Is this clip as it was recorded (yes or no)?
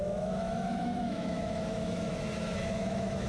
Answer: no